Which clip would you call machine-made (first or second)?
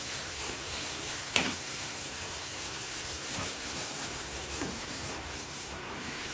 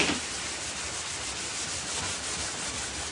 first